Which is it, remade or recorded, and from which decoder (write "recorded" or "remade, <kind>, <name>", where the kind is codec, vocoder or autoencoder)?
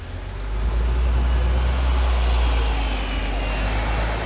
recorded